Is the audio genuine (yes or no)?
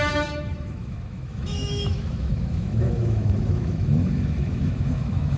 no